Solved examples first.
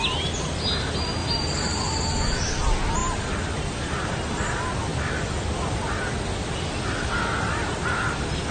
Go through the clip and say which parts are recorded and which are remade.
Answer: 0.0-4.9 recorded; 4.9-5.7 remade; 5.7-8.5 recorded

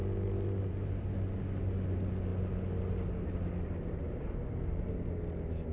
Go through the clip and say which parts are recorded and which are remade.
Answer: 0.0-5.7 recorded

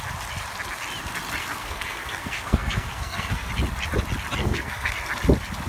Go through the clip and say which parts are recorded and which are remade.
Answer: 0.0-1.4 recorded; 1.4-3.5 remade; 3.5-4.4 recorded; 4.4-4.9 remade; 4.9-5.7 recorded

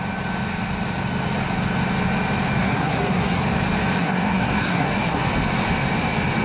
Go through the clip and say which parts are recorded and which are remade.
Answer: 0.0-2.6 recorded; 2.6-3.4 remade; 3.4-4.0 recorded; 4.0-5.3 remade; 5.3-6.4 recorded

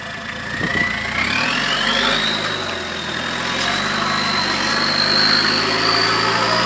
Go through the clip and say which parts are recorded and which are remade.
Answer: 0.0-6.7 recorded

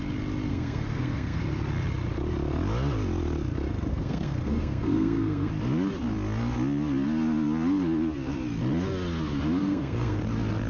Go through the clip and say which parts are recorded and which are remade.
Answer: 0.0-0.5 recorded; 0.5-1.4 remade; 1.4-3.9 recorded; 3.9-5.5 remade; 5.5-9.6 recorded; 9.6-10.2 remade; 10.2-10.7 recorded